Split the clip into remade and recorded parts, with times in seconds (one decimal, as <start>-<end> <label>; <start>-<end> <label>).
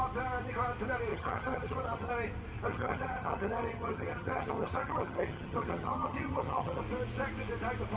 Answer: 0.0-1.1 recorded; 1.1-2.1 remade; 2.1-2.7 recorded; 2.7-6.8 remade; 6.8-8.0 recorded